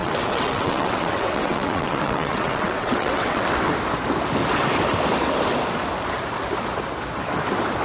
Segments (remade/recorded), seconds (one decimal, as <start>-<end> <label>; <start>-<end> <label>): 0.0-3.7 remade; 3.7-7.8 recorded